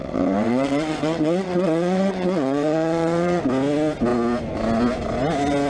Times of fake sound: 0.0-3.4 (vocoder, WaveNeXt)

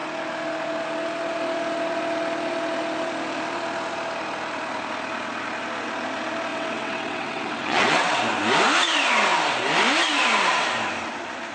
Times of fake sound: 6.5-8.2 (vocoder, WaveNeXt)

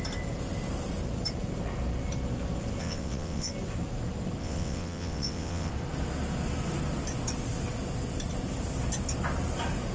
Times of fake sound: 2.8-3.5 (vocoder, WaveNeXt); 4.4-5.7

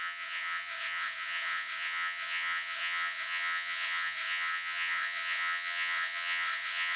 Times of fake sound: 0.0-7.0 (vocoder, WaveNeXt)

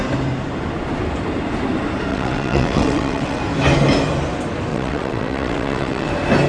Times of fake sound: 2.1-3.4 (vocoder, WaveNeXt); 4.7-6.1

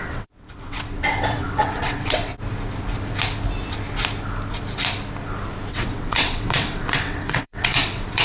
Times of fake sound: 0.0-2.3 (vocoder, WaveNeXt); 5.7-8.2